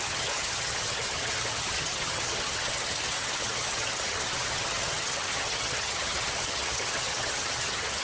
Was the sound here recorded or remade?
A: remade